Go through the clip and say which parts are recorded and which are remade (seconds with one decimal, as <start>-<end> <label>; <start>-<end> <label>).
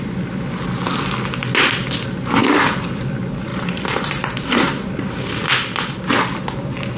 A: 0.0-2.4 recorded; 2.4-3.0 remade; 3.0-3.5 recorded; 3.5-6.0 remade; 6.0-7.0 recorded